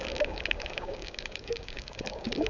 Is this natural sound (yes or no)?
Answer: no